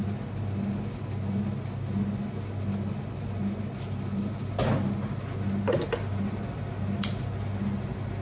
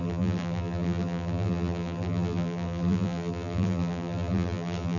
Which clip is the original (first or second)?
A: first